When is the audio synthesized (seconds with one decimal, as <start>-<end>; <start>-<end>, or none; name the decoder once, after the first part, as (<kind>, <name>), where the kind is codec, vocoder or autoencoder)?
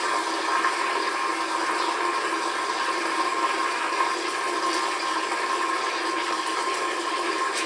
none